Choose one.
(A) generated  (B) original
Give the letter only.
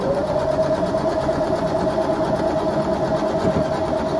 A